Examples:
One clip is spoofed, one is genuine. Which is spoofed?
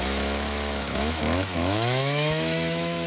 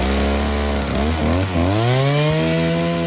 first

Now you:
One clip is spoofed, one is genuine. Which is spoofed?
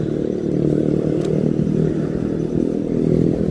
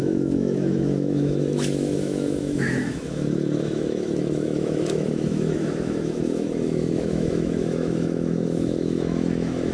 second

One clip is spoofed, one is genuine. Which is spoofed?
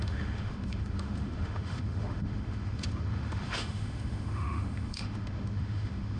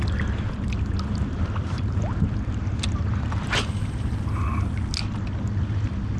first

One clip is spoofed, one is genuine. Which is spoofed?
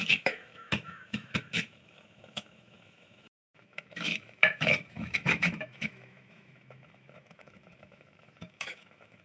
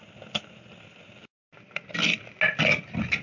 first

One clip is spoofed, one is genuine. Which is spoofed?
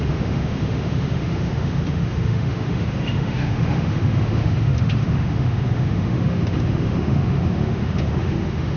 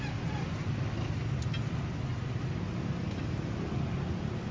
first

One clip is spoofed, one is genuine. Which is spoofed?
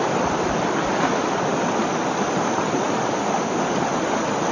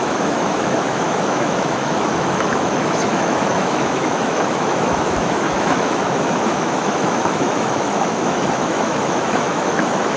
second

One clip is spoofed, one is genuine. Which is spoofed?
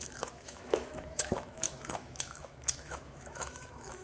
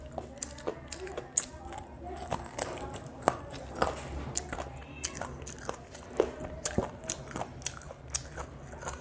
first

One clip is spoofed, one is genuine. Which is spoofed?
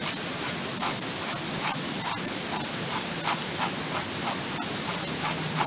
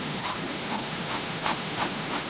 second